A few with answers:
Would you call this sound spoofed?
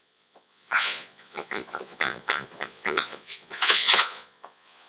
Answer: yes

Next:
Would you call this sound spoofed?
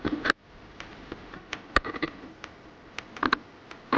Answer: no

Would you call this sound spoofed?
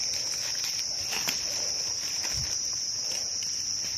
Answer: no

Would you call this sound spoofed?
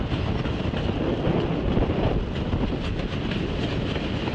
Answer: no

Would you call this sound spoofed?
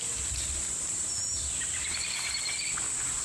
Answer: no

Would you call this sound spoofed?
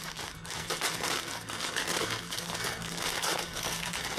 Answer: yes